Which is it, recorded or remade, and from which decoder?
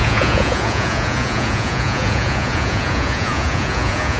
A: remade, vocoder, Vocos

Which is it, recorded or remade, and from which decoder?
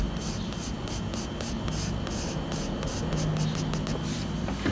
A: recorded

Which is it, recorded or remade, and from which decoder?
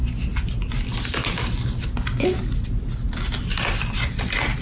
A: recorded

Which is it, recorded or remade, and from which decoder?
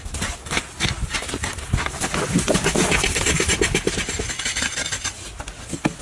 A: recorded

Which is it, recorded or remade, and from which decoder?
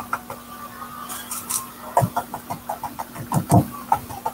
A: recorded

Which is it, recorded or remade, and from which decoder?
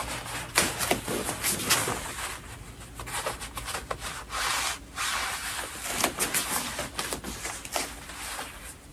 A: recorded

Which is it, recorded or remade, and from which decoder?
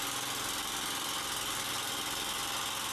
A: recorded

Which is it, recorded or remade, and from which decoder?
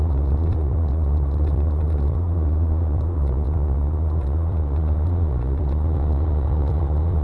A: remade, vocoder, Vocos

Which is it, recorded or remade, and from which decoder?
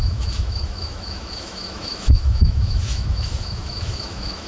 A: remade, autoencoder, DAC-VAE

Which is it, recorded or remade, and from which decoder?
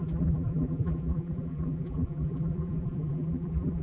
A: remade, vocoder, BigVGAN v2